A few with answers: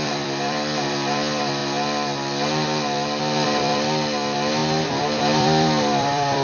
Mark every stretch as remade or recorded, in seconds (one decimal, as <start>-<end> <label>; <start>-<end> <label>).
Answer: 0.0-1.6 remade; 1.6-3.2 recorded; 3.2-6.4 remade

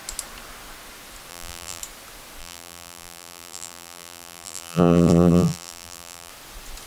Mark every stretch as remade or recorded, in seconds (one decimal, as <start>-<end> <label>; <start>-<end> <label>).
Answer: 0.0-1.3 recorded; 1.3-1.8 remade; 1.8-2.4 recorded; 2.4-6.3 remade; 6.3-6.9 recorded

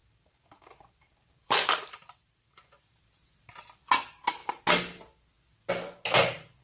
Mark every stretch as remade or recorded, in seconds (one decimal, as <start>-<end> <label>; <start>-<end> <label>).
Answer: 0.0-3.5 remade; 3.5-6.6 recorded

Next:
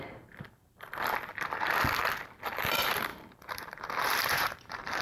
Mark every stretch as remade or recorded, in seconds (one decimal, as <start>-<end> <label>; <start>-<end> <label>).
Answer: 0.0-1.3 remade; 1.3-2.4 recorded; 2.4-5.0 remade

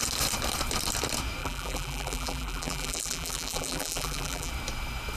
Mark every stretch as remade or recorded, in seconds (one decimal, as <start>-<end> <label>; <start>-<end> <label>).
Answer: 0.0-1.4 recorded; 1.4-4.5 remade; 4.5-5.2 recorded

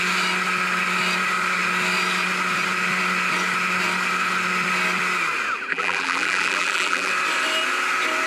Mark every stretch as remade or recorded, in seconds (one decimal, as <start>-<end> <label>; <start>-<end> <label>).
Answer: 0.0-5.7 recorded; 5.7-7.1 remade; 7.1-8.3 recorded

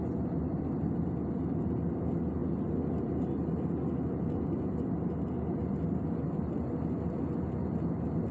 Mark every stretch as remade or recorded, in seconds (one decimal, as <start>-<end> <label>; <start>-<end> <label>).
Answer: 0.0-0.5 recorded; 0.5-1.1 remade; 1.1-8.3 recorded

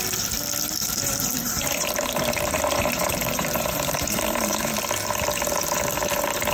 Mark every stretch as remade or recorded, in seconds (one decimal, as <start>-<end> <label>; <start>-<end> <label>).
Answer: 0.0-0.8 recorded; 0.8-4.7 remade; 4.7-6.5 recorded